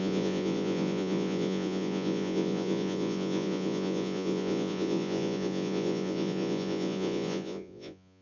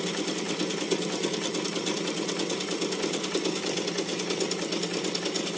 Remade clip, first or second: first